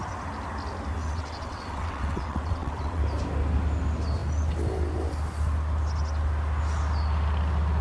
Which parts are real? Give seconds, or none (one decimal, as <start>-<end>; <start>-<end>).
0.0-1.0; 3.0-7.8